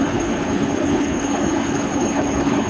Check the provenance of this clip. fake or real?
fake